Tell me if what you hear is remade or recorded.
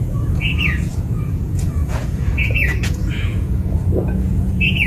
remade